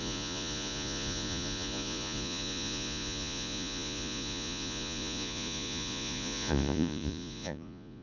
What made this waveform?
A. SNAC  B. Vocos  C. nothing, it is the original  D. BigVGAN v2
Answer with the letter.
B